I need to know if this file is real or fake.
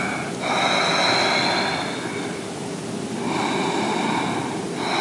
real